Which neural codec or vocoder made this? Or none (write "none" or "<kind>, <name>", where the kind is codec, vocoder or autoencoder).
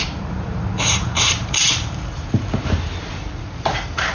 vocoder, BigVGAN v2